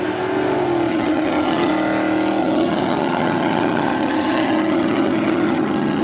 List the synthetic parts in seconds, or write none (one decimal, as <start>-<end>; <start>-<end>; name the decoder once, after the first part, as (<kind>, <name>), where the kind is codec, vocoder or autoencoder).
0.9-1.7 (vocoder, HiFi-GAN); 2.4-6.0